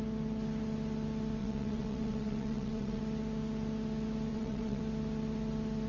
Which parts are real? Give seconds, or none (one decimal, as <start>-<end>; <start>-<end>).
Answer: 0.0-1.4; 3.0-4.3; 4.8-5.9